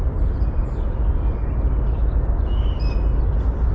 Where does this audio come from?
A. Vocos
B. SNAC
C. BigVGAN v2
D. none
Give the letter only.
D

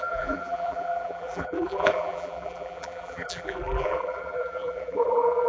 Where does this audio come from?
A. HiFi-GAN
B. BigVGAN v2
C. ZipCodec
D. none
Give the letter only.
B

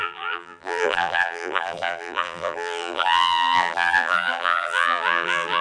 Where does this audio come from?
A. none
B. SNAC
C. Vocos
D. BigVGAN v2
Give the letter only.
D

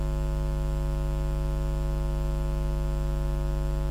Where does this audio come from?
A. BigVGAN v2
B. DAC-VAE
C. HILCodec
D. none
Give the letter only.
D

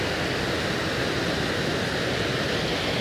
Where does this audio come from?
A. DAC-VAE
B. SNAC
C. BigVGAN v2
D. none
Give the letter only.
D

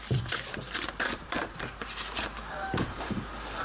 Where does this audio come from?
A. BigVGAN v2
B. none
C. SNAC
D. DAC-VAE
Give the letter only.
A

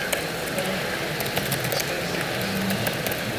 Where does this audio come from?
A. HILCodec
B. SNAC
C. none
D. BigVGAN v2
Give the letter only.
C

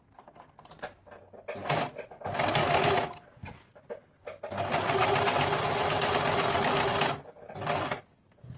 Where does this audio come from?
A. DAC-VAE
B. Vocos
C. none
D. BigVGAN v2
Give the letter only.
C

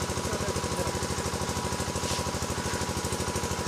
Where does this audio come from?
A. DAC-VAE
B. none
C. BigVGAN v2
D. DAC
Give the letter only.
B